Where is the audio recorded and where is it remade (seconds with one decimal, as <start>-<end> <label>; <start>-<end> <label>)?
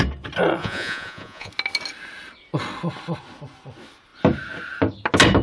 0.0-0.6 recorded; 0.6-1.5 remade; 1.5-5.4 recorded